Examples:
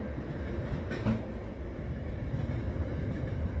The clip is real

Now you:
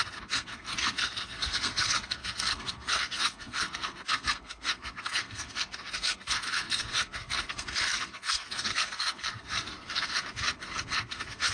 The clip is fake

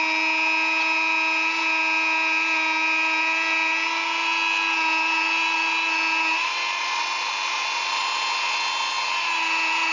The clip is real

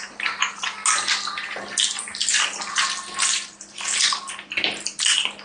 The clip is real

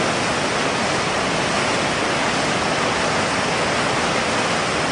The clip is real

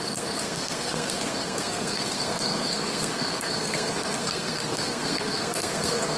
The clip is fake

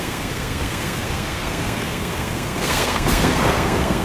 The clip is fake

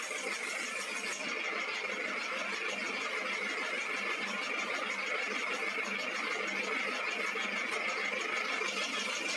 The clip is real